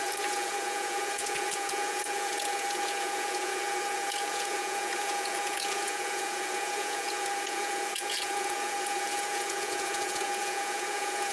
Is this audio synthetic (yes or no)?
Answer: yes